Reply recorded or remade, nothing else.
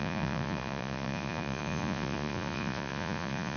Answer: remade